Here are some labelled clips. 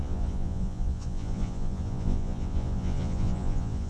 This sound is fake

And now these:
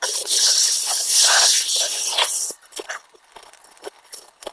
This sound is fake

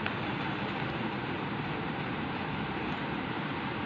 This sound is real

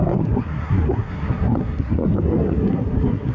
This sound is fake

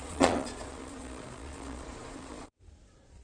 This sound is fake